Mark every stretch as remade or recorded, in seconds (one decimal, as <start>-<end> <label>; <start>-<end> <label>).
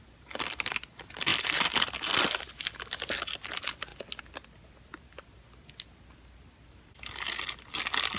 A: 0.0-8.2 recorded